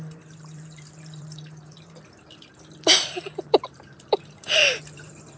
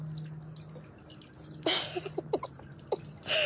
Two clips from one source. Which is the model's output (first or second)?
first